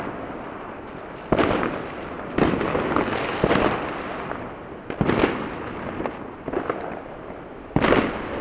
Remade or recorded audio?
recorded